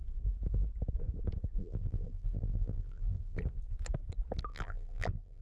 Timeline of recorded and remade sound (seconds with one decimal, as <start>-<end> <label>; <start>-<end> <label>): 0.0-1.6 recorded; 1.6-3.4 remade; 3.4-4.5 recorded; 4.5-5.4 remade